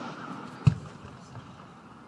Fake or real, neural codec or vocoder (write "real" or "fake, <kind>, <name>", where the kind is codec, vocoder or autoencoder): real